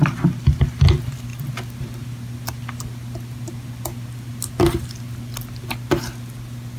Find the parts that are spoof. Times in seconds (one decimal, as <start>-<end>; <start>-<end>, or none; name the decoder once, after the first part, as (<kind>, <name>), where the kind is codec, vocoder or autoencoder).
none